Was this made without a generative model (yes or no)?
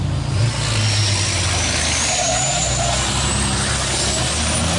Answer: yes